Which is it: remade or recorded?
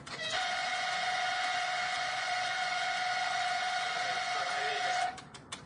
remade